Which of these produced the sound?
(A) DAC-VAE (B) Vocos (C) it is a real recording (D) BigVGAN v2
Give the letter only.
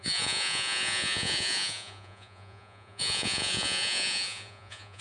B